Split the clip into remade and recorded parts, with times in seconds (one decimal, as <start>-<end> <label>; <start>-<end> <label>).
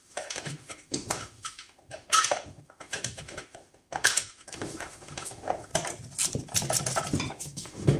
0.0-5.7 remade; 5.7-7.3 recorded; 7.3-8.0 remade